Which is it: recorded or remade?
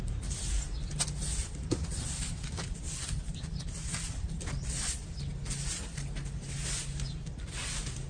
recorded